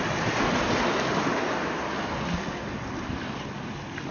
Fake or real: real